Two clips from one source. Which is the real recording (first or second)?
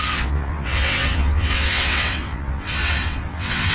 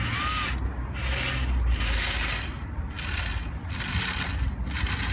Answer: second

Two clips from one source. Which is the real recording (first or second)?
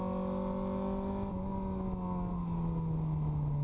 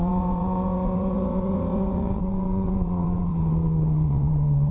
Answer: first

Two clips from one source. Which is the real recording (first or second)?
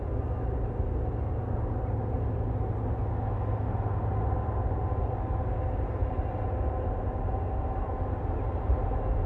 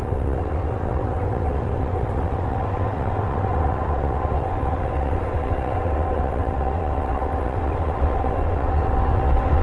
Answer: first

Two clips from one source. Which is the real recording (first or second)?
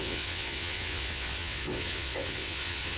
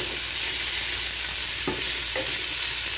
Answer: second